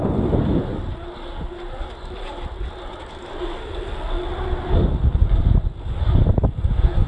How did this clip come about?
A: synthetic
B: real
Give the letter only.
B